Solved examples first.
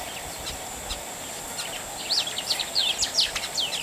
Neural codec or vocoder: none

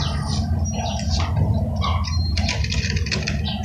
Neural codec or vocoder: none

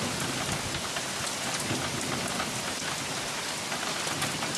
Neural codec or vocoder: none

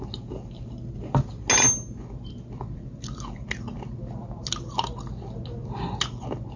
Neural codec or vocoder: none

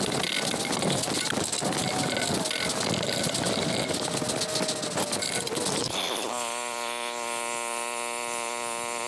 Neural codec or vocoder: none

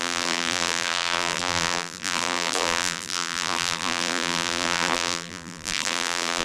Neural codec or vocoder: vocoder, BigVGAN v2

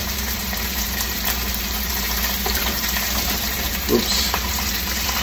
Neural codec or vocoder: vocoder, BigVGAN v2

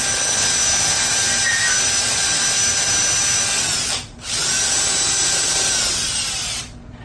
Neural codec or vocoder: none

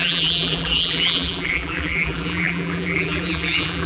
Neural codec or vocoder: vocoder, BigVGAN v2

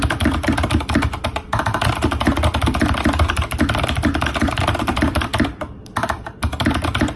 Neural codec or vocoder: vocoder, BigVGAN v2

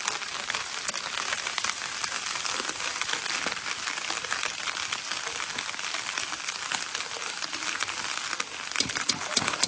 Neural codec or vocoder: none